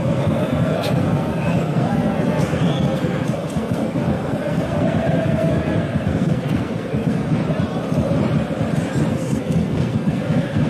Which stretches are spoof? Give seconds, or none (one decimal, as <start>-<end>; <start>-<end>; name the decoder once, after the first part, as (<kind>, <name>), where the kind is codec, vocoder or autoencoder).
0.0-7.4 (codec, SNAC); 9.1-10.7